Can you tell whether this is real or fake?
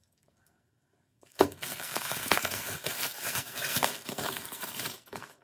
fake